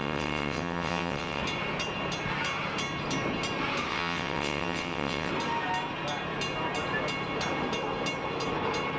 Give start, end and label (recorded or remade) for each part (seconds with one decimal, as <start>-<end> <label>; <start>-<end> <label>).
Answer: 0.0-1.4 remade; 1.4-3.9 recorded; 3.9-5.3 remade; 5.3-9.0 recorded